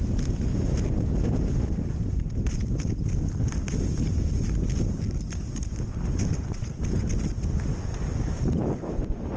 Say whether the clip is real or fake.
real